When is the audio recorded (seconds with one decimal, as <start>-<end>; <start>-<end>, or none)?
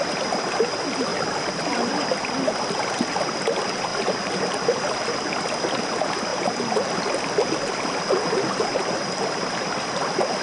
0.0-10.4